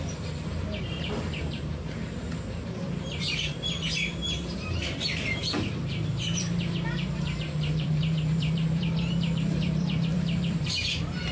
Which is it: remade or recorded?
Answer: remade